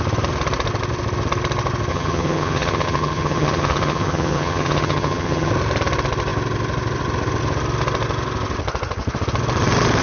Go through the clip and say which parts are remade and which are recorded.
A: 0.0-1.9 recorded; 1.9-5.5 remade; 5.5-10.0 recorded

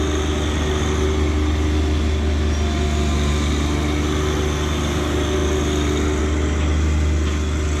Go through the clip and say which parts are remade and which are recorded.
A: 0.0-7.8 recorded

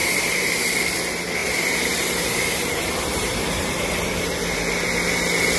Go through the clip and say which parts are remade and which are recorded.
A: 0.0-0.7 remade; 0.7-1.4 recorded; 1.4-4.4 remade; 4.4-5.6 recorded

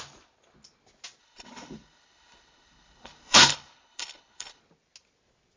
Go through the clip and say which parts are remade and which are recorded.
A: 0.0-1.2 recorded; 1.2-4.6 remade; 4.6-5.6 recorded

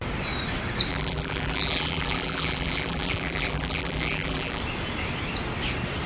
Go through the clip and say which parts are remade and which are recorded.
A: 0.0-0.9 recorded; 0.9-4.6 remade; 4.6-6.1 recorded

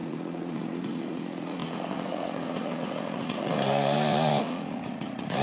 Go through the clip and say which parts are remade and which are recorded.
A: 0.0-5.4 remade